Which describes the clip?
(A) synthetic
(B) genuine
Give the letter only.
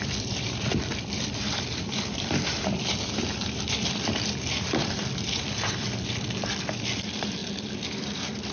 A